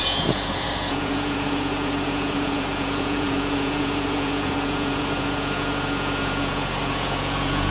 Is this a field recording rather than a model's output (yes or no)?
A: no